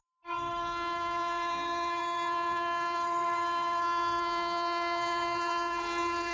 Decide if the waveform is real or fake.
fake